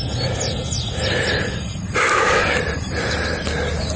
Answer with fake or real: real